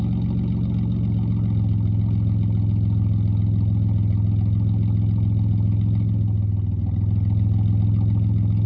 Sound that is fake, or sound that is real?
real